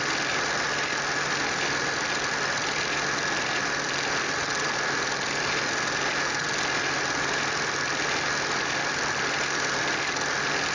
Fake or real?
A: real